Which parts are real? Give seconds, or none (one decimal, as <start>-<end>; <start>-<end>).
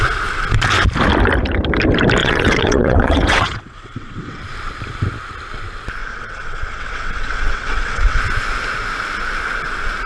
0.0-2.2; 4.4-6.0; 8.2-10.1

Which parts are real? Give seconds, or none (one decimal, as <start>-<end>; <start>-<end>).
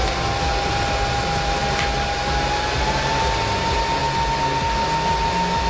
0.0-5.7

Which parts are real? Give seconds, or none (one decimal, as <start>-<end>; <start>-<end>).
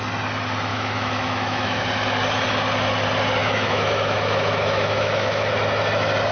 0.0-0.7; 1.8-3.4; 5.5-6.3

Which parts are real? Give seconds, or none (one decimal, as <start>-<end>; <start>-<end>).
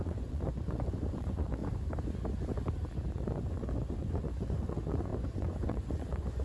1.6-3.1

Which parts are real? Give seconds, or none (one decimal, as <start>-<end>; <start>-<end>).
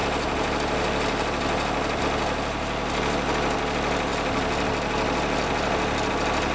0.0-6.5